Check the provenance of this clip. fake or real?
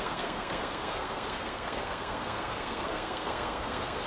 fake